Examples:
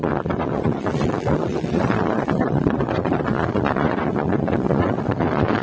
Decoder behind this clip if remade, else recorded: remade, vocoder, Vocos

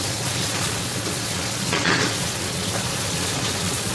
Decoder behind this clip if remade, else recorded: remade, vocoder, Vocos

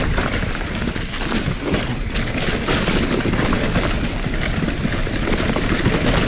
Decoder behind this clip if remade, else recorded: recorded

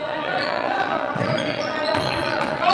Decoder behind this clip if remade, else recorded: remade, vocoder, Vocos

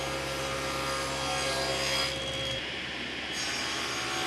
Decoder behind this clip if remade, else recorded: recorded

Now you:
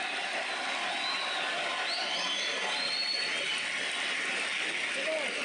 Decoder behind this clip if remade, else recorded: recorded